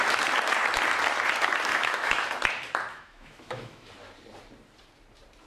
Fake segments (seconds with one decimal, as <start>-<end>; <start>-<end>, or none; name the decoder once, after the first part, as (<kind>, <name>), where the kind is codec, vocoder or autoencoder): 1.7-2.3 (autoencoder, DAC-VAE); 2.9-3.9